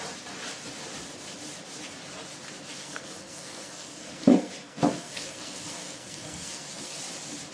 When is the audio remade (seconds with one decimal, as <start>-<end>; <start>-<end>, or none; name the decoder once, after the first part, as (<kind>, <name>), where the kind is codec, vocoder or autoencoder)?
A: 2.7-7.0 (codec, SNAC)